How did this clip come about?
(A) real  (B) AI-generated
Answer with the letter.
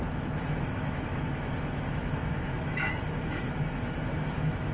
B